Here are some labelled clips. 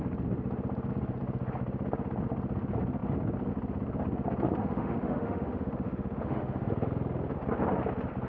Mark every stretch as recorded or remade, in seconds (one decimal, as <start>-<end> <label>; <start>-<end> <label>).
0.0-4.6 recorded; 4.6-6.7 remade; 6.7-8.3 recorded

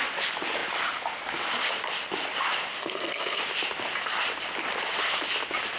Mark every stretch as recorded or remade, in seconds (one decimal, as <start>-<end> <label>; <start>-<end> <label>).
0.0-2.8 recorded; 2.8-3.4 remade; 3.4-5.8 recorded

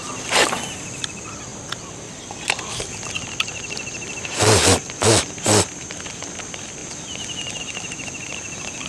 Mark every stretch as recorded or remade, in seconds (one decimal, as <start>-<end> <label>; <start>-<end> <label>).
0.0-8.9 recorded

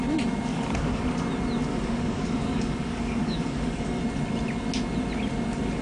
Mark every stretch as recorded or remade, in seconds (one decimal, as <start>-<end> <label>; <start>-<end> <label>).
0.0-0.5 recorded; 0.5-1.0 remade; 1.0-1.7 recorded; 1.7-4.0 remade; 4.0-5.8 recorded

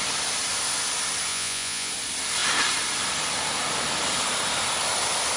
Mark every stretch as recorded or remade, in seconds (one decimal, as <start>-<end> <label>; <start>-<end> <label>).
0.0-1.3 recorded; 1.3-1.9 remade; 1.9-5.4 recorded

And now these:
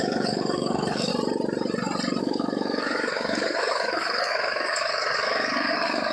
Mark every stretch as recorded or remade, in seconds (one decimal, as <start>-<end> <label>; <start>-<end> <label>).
0.0-1.1 remade; 1.1-2.2 recorded; 2.2-6.1 remade

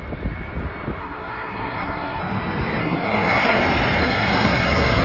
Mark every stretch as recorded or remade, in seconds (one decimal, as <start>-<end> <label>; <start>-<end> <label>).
0.0-1.0 recorded; 1.0-2.2 remade; 2.2-2.8 recorded; 2.8-3.6 remade; 3.6-4.0 recorded; 4.0-5.0 remade

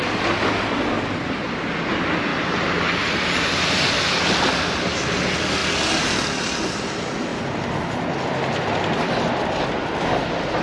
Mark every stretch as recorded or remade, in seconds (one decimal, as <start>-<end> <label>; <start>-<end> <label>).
0.0-2.3 recorded; 2.3-4.5 remade; 4.5-10.6 recorded